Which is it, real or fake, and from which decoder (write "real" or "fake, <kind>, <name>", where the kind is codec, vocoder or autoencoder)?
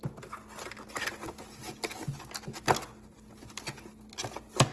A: real